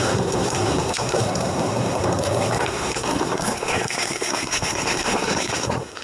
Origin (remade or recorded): remade